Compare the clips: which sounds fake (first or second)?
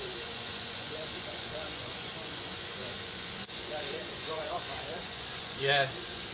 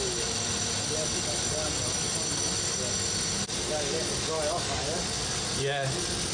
first